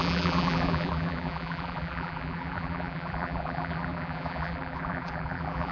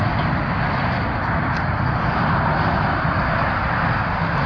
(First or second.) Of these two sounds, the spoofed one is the first